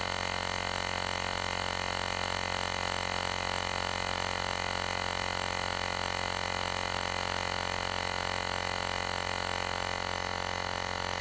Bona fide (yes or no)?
yes